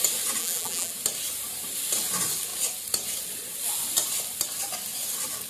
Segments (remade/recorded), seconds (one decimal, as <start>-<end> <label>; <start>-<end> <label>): 0.0-0.4 recorded; 0.4-0.9 remade; 0.9-5.5 recorded